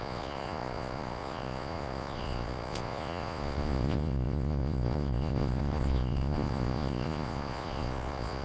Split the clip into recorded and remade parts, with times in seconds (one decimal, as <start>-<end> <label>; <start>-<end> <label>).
0.0-8.4 remade